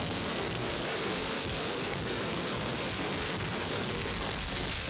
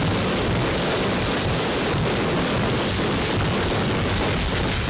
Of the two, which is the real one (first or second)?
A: second